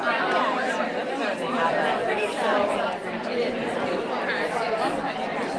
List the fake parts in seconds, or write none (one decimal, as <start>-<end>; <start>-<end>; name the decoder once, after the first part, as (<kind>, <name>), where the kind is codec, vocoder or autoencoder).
2.0-5.6 (vocoder, BigVGAN v2)